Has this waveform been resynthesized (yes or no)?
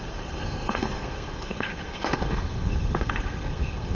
yes